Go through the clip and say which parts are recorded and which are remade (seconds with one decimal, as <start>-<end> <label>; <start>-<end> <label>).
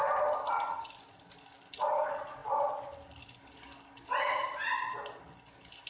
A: 0.0-5.9 recorded